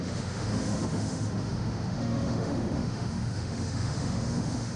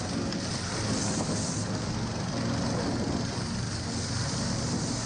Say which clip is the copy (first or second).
first